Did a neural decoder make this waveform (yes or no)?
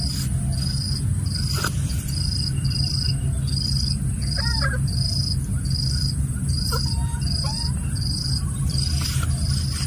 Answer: no